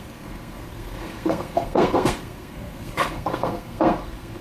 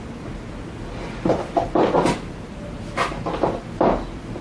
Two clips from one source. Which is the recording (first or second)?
second